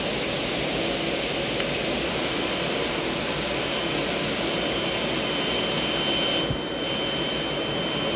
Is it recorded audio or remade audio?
recorded